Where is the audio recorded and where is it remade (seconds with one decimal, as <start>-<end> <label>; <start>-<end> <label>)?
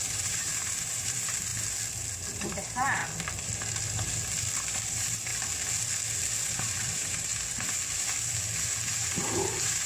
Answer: 0.0-1.5 remade; 1.5-2.4 recorded; 2.4-3.0 remade; 3.0-4.5 recorded; 4.5-5.3 remade; 5.3-6.6 recorded; 6.6-7.3 remade; 7.3-9.2 recorded; 9.2-9.9 remade